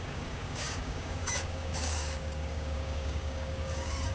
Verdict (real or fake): fake